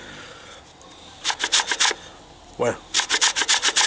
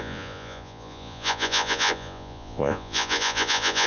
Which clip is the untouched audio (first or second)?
first